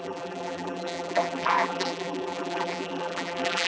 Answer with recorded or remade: remade